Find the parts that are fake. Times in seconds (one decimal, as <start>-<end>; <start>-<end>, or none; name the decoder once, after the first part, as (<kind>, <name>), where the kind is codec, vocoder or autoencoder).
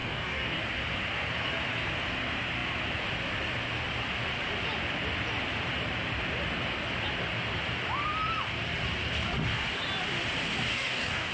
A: 0.0-0.6 (codec, DAC); 10.7-11.3